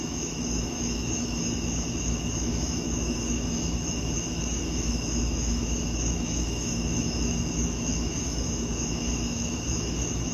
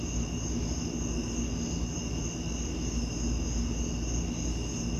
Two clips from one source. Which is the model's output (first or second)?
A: first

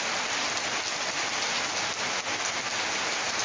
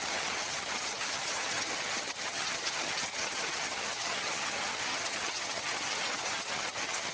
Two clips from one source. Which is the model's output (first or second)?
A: second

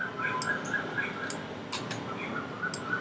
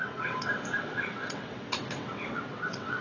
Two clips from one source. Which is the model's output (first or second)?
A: second